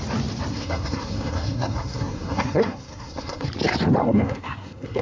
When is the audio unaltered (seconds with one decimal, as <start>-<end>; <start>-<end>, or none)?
0.0-0.5; 3.5-4.0